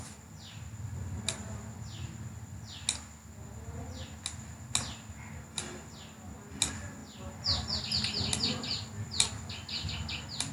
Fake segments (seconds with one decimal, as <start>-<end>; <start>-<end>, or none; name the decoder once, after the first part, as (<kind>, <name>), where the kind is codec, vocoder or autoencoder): none